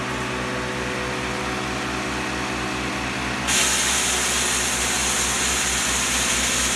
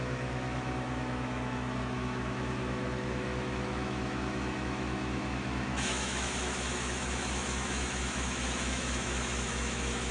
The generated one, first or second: second